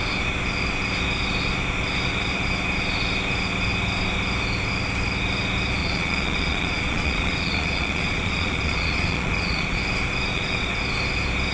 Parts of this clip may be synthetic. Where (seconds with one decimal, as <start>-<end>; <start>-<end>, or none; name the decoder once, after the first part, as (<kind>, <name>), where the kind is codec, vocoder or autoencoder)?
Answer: 5.8-9.8 (vocoder, Vocos); 10.3-10.8